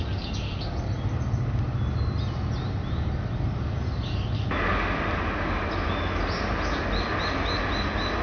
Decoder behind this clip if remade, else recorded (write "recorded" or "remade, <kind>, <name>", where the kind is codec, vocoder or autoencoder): recorded